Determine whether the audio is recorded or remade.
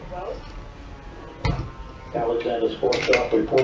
recorded